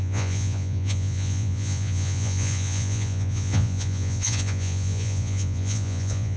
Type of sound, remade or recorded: remade